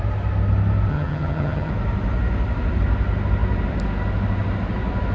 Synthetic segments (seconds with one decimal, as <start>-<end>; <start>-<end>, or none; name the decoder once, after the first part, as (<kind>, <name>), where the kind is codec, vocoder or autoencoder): 0.9-1.7 (vocoder, HiFi-GAN)